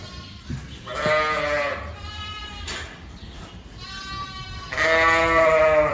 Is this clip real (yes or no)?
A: yes